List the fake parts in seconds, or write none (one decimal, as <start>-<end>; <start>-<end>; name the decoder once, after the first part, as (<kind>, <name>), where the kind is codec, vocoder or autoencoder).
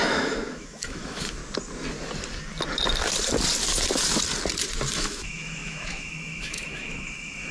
0.0-1.4 (autoencoder, DAC-VAE); 4.9-7.5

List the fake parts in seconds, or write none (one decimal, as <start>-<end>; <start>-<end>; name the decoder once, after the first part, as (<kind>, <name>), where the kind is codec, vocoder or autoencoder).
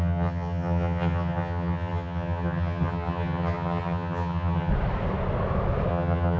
0.0-4.7 (vocoder, HiFi-GAN); 5.9-6.4